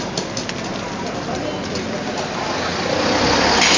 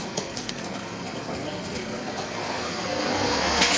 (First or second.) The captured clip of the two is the first